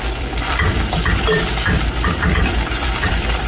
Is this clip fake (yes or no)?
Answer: yes